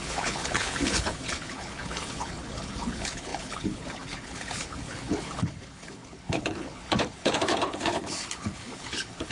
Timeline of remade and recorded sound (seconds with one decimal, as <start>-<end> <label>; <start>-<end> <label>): 0.0-9.3 remade